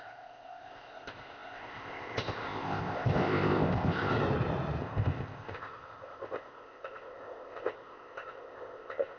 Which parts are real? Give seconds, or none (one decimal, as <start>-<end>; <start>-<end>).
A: 4.1-4.8